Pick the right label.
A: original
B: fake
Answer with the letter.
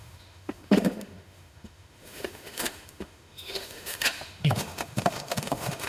B